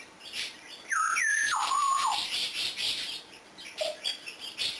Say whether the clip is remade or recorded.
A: remade